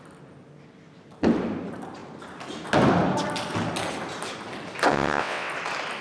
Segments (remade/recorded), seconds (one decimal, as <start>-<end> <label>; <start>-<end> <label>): 0.0-4.9 recorded; 4.9-5.5 remade; 5.5-6.0 recorded